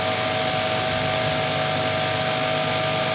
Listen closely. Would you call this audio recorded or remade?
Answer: recorded